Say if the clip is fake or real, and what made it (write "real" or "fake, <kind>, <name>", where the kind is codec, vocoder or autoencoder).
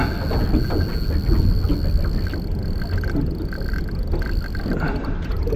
real